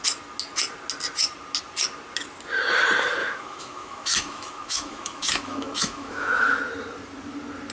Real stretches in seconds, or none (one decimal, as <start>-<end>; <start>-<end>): 0.0-3.2; 6.6-7.7